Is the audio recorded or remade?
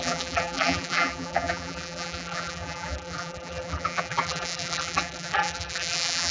remade